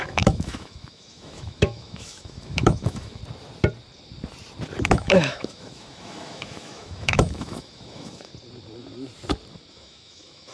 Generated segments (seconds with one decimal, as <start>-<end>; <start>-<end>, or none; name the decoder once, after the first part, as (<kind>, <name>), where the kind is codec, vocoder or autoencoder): 0.0-3.2 (autoencoder, DAC-VAE); 4.8-8.3; 9.7-10.5